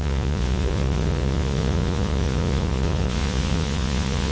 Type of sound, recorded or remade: remade